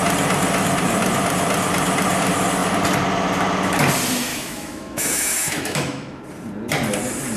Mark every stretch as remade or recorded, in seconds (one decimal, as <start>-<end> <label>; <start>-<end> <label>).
0.0-4.3 recorded; 4.3-6.2 remade; 6.2-7.4 recorded